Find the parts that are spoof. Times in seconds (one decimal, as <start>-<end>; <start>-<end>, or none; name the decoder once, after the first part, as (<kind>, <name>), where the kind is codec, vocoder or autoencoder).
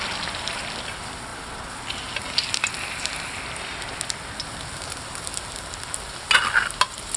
none